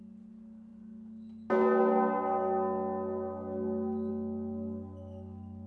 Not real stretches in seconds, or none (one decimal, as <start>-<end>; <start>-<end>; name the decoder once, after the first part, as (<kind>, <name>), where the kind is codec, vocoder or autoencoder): none